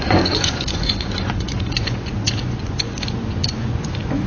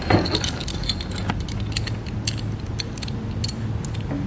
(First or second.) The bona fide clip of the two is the second